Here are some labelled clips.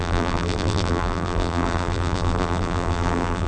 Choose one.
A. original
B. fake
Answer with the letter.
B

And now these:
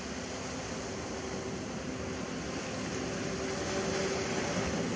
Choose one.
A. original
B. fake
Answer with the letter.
A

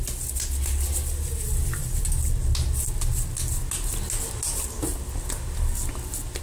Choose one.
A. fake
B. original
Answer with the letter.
B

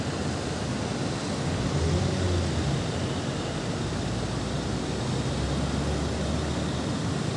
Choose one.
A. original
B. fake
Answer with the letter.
A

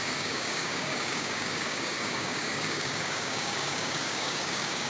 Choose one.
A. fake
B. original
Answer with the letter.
A